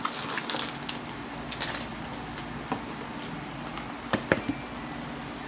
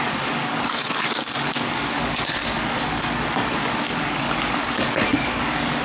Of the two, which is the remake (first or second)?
second